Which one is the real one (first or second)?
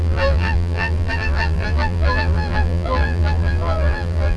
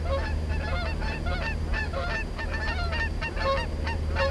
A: second